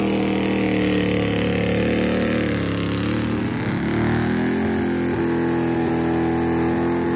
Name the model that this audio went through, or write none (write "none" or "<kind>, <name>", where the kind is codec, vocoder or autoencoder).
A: none